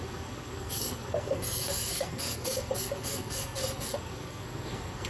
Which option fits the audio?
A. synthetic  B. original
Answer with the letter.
A